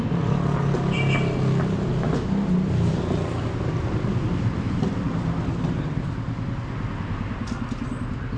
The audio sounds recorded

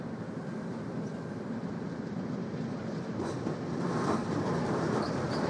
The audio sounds remade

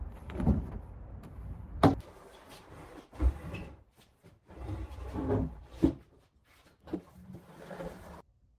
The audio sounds remade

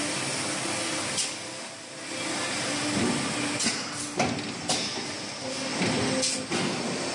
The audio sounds recorded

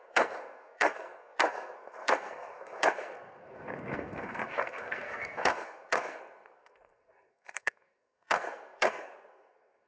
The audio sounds remade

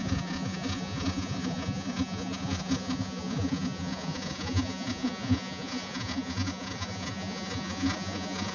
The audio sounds remade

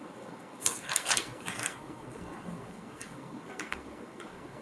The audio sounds remade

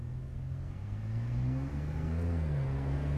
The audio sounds remade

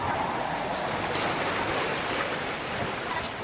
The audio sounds recorded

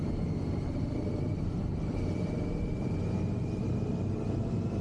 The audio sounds recorded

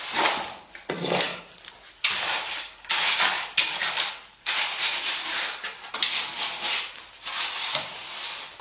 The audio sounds recorded